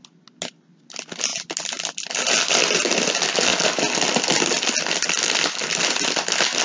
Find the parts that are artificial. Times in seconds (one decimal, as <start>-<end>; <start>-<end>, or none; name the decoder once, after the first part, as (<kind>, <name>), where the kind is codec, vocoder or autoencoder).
none